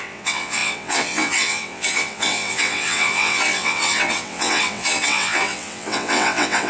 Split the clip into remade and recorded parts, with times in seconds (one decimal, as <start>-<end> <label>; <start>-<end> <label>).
0.0-6.7 remade